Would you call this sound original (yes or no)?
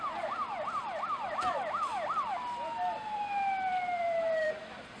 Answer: no